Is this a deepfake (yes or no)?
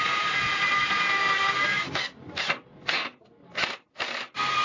no